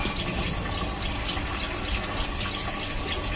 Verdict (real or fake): real